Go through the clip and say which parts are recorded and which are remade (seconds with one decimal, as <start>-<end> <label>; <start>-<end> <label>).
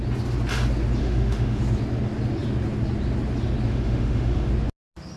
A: 0.0-1.0 recorded; 1.0-1.6 remade; 1.6-3.7 recorded; 3.7-4.5 remade; 4.5-5.2 recorded